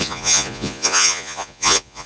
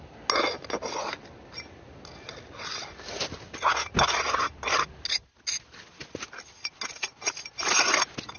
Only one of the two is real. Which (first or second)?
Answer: second